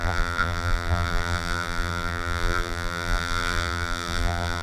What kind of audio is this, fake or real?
fake